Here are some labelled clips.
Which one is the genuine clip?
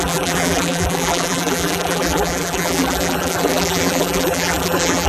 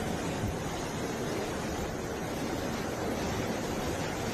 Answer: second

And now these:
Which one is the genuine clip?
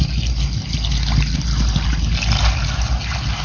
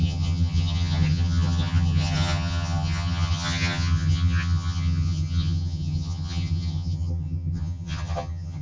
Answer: first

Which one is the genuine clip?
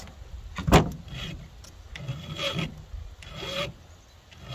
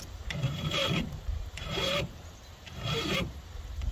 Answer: first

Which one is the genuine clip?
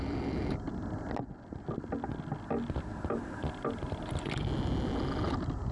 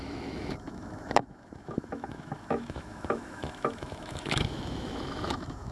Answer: first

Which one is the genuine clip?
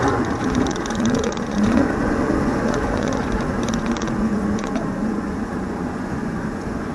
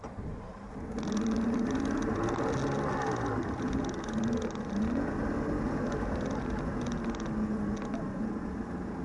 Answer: second